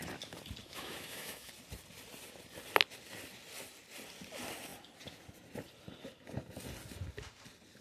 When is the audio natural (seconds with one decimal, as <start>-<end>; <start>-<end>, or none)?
0.0-0.6; 1.5-7.8